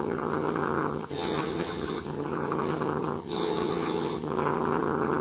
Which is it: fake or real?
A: fake